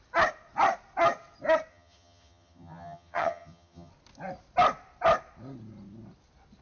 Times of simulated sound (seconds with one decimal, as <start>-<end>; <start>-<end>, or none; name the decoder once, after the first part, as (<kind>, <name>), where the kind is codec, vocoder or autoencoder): 1.7-3.9 (vocoder, HiFi-GAN)